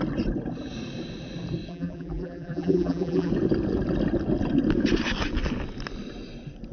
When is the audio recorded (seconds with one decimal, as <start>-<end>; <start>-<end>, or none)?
0.0-1.7; 3.3-6.7